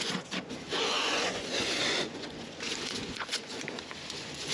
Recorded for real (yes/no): no